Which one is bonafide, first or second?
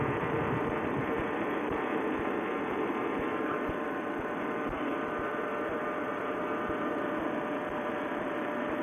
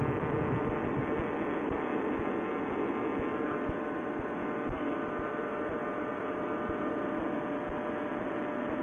second